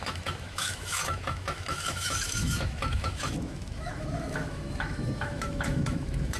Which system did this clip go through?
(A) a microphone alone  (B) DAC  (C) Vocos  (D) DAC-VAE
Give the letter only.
D